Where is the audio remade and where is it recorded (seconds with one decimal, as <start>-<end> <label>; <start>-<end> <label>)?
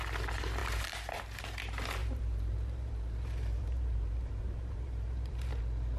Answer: 0.0-0.6 recorded; 0.6-1.2 remade; 1.2-2.0 recorded; 2.0-5.6 remade; 5.6-6.0 recorded